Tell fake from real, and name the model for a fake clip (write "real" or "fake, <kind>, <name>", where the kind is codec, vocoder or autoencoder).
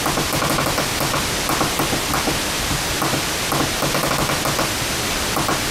real